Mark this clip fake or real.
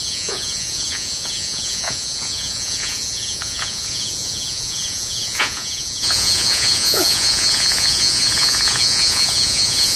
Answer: fake